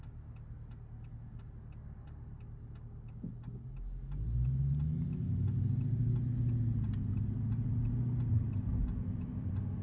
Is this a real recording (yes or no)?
yes